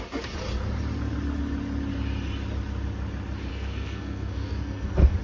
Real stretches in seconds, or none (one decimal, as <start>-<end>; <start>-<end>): 0.0-3.5